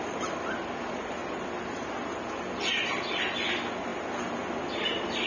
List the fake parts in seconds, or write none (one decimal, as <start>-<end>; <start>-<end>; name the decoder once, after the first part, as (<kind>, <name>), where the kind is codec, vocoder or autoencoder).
none